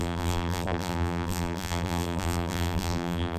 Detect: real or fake fake